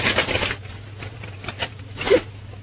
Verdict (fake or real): fake